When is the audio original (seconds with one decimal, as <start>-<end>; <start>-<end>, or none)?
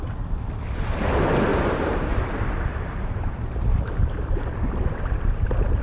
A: 0.0-1.5; 3.8-5.8